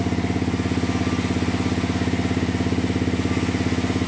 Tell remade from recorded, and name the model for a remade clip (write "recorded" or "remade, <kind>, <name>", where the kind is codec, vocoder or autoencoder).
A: recorded